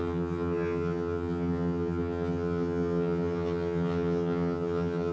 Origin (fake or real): fake